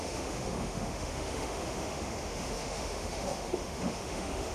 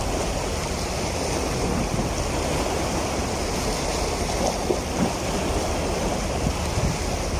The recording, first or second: second